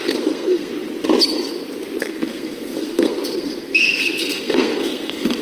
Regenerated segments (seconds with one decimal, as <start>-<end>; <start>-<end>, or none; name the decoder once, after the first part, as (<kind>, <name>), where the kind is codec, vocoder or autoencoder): 0.0-0.7 (codec, SNAC); 2.0-5.4